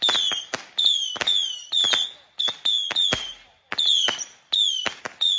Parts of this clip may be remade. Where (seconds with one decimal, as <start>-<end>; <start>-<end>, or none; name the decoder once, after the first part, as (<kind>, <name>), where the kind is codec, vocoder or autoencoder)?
none